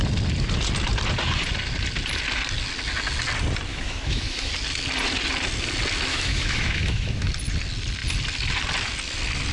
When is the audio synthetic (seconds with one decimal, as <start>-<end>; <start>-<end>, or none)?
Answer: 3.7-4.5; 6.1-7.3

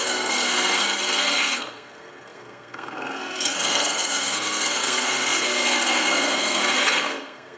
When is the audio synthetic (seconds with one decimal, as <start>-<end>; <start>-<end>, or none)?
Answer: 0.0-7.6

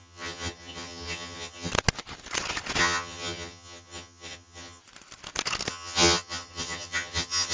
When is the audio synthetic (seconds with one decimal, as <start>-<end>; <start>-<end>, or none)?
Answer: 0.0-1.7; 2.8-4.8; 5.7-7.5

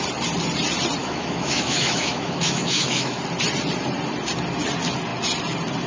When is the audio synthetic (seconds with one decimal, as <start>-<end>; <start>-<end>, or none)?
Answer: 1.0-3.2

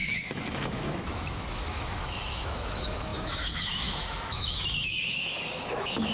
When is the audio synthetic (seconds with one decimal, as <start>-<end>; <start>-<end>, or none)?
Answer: 0.0-6.1